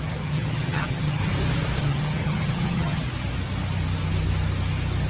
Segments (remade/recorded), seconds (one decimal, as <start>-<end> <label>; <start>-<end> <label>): 0.0-1.2 remade; 1.2-1.8 recorded; 1.8-3.0 remade; 3.0-5.1 recorded